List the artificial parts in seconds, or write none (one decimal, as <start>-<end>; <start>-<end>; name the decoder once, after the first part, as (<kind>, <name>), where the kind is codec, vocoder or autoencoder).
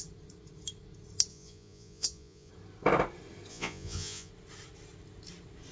1.3-2.5 (vocoder, Vocos); 3.5-4.3